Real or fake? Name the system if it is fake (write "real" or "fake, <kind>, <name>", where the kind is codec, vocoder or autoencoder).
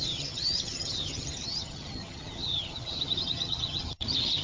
fake, vocoder, HiFi-GAN